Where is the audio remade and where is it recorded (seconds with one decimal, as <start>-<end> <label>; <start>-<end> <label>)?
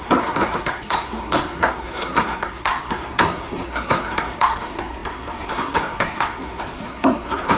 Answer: 0.0-7.6 remade